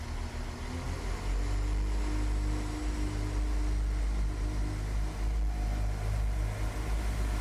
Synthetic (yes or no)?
no